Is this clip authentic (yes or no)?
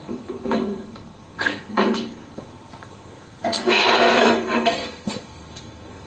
no